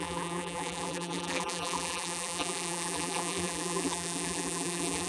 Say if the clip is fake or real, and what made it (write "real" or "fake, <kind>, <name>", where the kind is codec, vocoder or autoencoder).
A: fake, vocoder, BigVGAN v2